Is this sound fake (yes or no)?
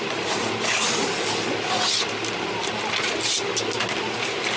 no